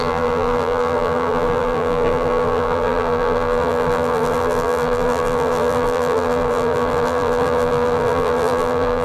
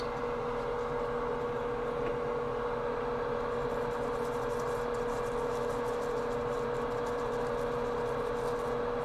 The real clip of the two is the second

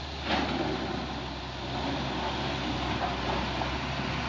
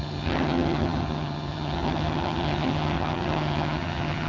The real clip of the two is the first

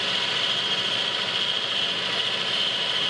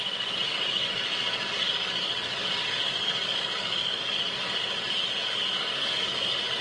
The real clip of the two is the first